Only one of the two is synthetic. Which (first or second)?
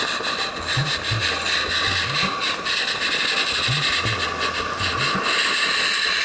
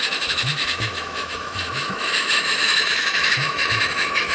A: second